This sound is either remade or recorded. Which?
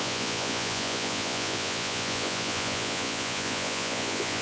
remade